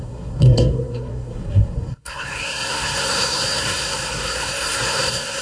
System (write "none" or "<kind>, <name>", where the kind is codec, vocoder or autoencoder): codec, SNAC